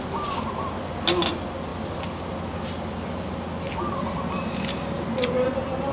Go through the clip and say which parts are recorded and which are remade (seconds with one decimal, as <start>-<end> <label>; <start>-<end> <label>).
0.0-5.9 recorded